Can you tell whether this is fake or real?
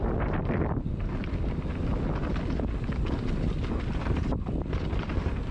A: real